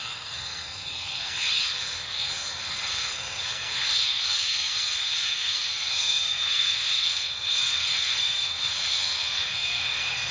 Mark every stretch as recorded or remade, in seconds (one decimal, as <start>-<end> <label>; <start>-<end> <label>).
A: 0.0-10.3 remade